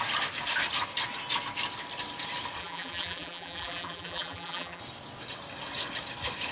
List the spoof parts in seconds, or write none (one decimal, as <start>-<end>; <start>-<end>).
2.6-4.8